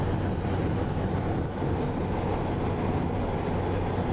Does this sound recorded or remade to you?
recorded